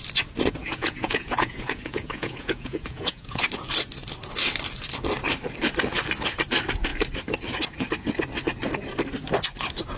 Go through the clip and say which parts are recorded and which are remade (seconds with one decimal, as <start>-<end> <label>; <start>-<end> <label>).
0.0-0.6 recorded; 0.6-3.4 remade; 3.4-10.0 recorded